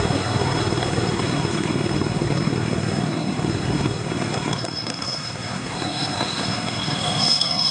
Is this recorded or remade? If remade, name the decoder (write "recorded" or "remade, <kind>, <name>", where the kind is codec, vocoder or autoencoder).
remade, codec, SNAC